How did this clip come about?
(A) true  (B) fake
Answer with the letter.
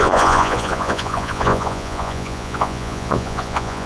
B